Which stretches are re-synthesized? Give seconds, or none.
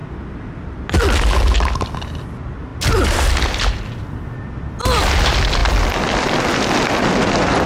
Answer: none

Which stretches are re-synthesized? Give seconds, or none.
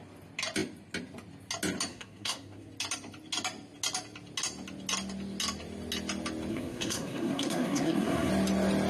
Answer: 1.9-2.7 (codec, SNAC); 6.5-8.3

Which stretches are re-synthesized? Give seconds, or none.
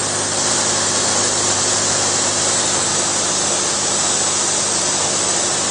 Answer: 0.0-0.5 (vocoder, BigVGAN v2); 2.9-4.8